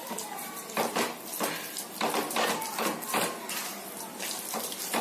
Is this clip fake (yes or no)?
no